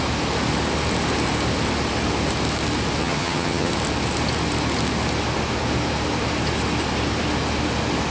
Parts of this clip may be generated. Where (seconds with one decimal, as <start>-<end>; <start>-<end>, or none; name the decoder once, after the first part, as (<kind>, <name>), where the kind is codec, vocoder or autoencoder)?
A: 3.0-3.7 (vocoder, HiFi-GAN)